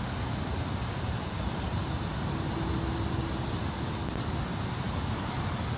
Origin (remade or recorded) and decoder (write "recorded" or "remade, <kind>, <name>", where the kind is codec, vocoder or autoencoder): recorded